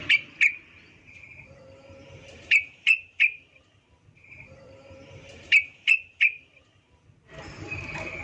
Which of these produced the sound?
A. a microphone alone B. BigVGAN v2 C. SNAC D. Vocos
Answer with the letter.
B